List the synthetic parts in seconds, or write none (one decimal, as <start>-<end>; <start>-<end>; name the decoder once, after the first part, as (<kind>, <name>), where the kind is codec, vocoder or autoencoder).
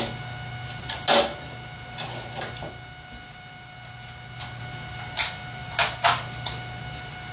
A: none